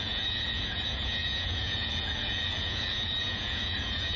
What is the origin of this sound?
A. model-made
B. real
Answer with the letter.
A